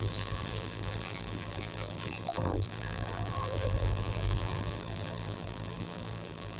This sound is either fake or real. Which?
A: fake